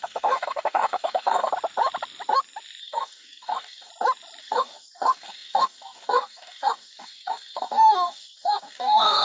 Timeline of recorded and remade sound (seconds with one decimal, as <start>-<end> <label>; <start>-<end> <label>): 0.0-1.5 remade; 1.5-2.8 recorded; 2.8-3.9 remade; 3.9-4.4 recorded; 4.4-9.2 remade

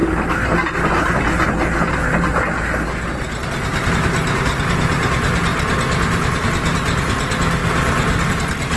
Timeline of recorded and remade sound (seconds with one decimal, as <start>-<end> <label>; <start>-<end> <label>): 0.0-8.8 recorded